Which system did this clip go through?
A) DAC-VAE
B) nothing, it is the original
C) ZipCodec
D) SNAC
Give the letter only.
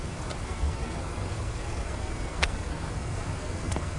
D